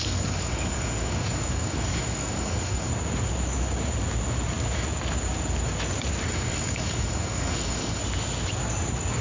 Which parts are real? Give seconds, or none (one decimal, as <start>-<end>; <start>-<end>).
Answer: 2.9-6.3; 8.0-9.2